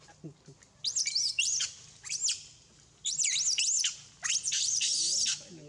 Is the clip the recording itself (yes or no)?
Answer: yes